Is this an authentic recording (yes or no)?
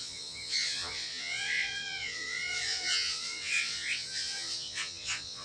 no